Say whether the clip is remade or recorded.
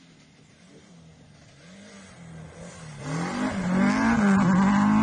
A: recorded